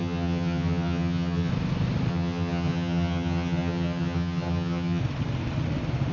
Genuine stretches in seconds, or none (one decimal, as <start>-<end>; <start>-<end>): 1.5-2.1; 5.0-6.1